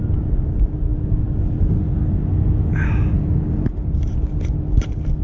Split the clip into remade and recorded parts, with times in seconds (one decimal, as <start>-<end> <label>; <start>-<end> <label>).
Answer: 0.0-5.2 recorded